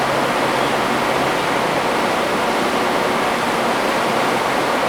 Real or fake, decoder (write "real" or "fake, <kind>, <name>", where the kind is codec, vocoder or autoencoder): real